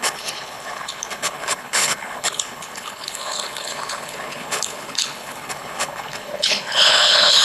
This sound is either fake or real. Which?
fake